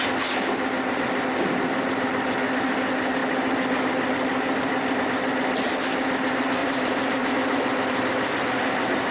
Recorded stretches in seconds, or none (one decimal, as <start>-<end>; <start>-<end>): 0.0-6.6; 7.3-9.1